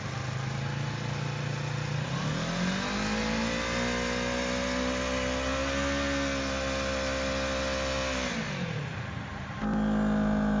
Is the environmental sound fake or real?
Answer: real